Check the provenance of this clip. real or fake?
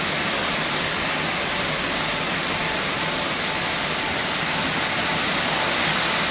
real